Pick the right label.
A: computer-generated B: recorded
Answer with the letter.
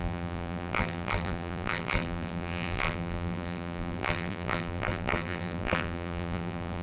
A